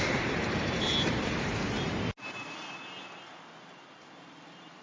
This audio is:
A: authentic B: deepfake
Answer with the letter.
A